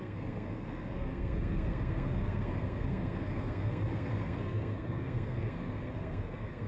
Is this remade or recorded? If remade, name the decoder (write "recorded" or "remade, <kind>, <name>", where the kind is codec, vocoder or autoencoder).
remade, codec, SNAC